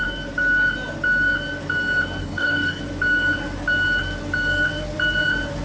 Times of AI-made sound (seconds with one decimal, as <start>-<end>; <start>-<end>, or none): 2.2-2.8